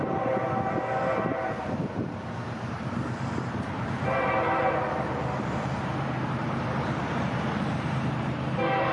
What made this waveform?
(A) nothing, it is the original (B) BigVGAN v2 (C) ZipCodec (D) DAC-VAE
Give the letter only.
B